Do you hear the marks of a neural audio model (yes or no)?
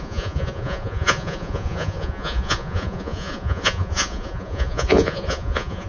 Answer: yes